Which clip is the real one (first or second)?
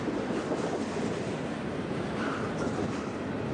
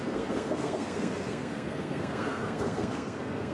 first